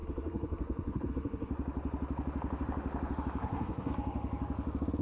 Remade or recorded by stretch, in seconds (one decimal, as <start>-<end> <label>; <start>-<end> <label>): 0.0-1.5 remade; 1.5-3.4 recorded; 3.4-3.9 remade; 3.9-5.0 recorded